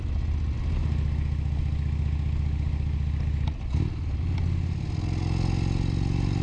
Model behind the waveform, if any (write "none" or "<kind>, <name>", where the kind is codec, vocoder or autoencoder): none